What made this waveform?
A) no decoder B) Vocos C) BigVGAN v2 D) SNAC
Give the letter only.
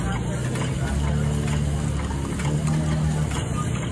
A